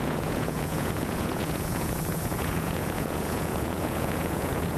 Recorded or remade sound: remade